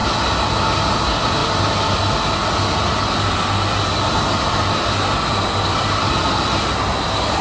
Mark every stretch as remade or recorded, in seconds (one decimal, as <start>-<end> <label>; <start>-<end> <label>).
0.0-7.4 recorded